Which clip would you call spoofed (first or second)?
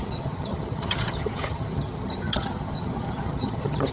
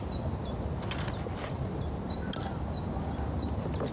first